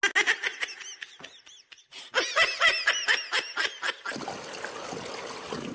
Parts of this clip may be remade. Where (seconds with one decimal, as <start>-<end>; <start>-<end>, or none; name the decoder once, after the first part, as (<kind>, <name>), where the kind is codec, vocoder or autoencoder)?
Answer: none